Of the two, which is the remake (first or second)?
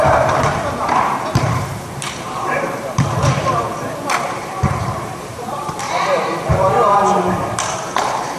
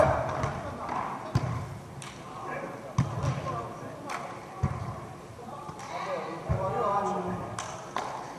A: first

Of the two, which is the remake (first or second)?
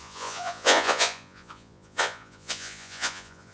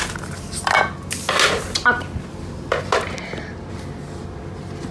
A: first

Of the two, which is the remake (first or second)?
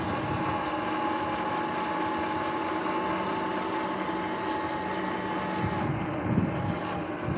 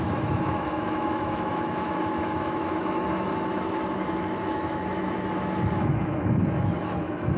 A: second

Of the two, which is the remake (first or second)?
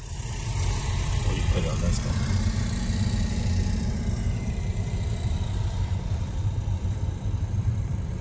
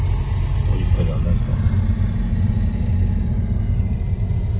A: first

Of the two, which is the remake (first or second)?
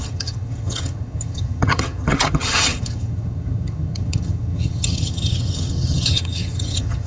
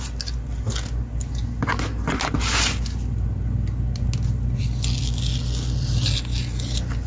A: first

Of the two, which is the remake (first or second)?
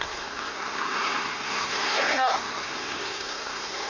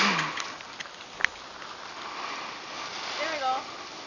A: first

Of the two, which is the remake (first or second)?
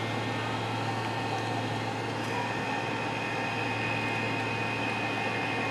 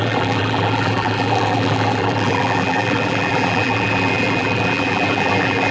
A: second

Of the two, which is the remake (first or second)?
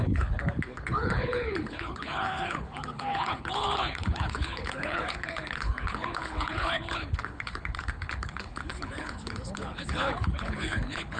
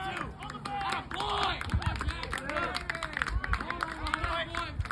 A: first